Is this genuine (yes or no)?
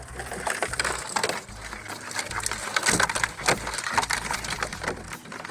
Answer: yes